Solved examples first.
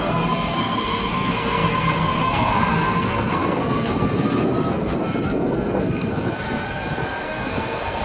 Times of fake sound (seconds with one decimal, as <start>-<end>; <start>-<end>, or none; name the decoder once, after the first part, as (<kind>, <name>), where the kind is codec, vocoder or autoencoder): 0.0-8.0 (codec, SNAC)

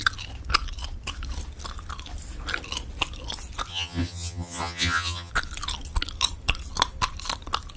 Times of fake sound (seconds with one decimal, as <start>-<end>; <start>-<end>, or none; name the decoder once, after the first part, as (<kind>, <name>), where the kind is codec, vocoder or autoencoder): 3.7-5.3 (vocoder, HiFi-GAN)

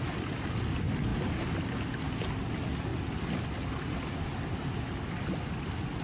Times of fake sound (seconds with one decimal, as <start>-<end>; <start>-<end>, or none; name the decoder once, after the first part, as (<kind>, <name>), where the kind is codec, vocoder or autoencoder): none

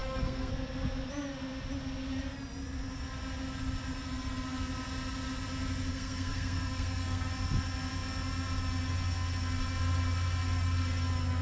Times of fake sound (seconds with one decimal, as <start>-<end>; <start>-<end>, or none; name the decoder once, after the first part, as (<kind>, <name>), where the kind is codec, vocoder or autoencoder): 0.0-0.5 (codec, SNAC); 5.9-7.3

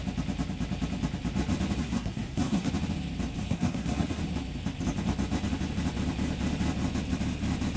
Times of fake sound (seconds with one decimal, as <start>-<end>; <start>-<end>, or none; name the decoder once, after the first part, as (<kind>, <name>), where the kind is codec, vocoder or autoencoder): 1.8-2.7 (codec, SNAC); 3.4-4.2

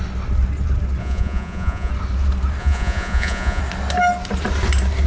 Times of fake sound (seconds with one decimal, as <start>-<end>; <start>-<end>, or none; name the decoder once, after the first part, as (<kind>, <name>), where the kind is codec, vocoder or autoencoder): 1.0-1.9 (vocoder, Vocos); 2.6-3.6

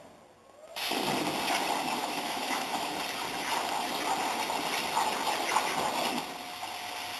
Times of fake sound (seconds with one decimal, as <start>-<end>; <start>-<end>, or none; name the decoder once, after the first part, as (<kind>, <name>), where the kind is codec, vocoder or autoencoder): 2.0-2.9 (autoencoder, DAC-VAE)

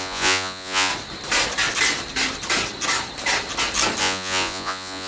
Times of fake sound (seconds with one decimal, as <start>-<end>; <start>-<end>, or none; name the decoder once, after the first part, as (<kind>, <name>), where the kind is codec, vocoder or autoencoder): 0.0-0.9 (vocoder, Vocos); 4.0-5.1